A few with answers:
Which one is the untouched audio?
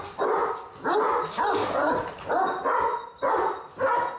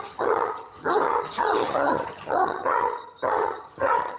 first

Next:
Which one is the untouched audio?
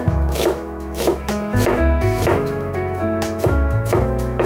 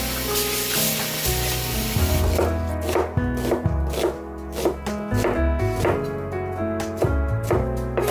second